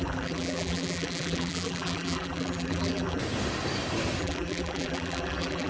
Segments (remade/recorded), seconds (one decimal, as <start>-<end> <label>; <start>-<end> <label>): 0.0-3.2 remade; 3.2-4.2 recorded; 4.2-5.7 remade

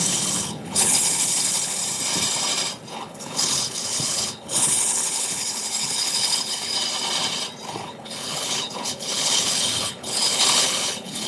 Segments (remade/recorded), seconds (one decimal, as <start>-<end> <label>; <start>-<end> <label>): 0.0-1.8 remade; 1.8-2.9 recorded; 2.9-6.7 remade; 6.7-7.7 recorded; 7.7-11.3 remade